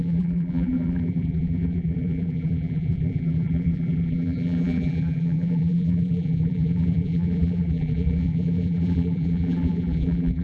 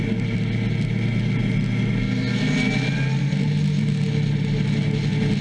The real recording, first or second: second